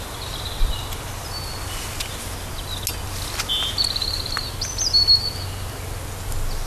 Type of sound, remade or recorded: recorded